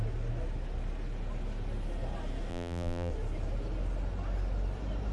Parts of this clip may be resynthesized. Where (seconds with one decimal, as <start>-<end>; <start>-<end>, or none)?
2.5-3.1